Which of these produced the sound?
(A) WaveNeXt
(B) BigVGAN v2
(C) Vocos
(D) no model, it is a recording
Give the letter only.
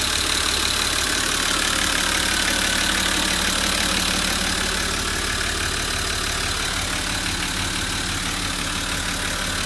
D